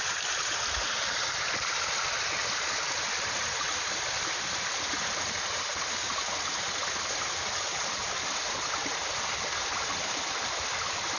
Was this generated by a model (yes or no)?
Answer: no